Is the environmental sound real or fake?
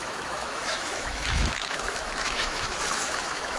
fake